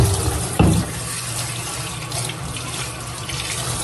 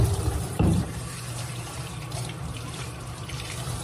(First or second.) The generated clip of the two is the second